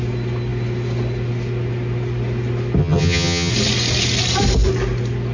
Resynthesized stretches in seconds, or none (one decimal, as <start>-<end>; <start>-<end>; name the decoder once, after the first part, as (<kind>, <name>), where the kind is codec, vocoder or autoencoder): 2.8-3.5 (vocoder, HiFi-GAN)